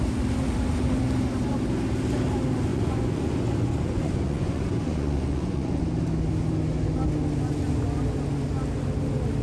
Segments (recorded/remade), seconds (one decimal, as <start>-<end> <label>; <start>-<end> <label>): 0.0-2.7 recorded; 2.7-5.8 remade; 5.8-9.4 recorded

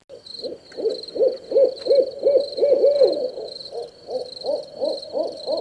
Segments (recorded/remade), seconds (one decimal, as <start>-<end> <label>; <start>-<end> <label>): 0.0-2.6 recorded; 2.6-3.7 remade; 3.7-5.6 recorded